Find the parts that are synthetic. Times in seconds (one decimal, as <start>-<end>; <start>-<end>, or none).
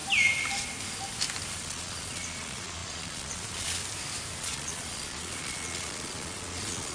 1.5-3.8; 4.4-6.9